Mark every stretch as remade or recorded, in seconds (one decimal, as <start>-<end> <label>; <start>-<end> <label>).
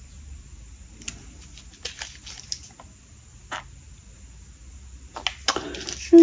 0.0-6.2 recorded